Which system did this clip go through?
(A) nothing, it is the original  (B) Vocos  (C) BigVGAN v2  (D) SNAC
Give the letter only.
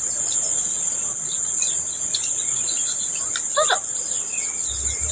A